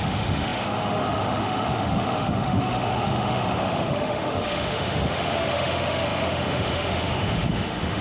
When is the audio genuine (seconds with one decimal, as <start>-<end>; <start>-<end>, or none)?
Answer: none